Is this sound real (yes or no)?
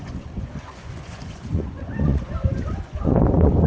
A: no